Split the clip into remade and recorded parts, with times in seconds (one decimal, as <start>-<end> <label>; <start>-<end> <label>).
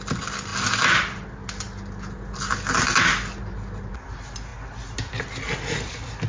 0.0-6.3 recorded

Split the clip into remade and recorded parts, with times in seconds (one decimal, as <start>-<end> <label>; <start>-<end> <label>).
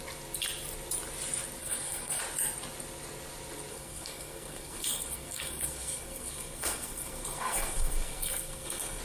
0.0-1.6 recorded; 1.6-2.2 remade; 2.2-3.7 recorded; 3.7-9.0 remade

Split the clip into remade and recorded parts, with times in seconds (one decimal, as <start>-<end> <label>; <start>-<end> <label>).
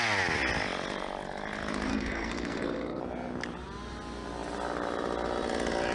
0.0-1.9 recorded; 1.9-3.0 remade; 3.0-5.9 recorded